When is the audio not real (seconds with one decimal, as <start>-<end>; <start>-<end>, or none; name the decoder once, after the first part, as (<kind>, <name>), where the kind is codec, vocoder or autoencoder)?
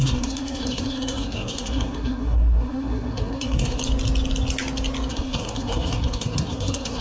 0.0-3.8 (codec, SNAC); 5.1-7.0